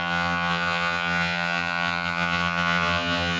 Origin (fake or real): fake